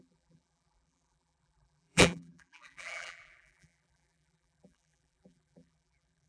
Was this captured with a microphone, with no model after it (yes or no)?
no